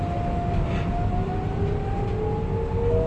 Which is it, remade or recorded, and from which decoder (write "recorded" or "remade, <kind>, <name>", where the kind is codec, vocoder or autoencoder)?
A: recorded